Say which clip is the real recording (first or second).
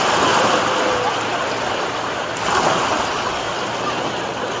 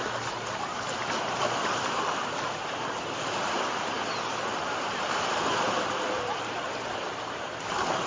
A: first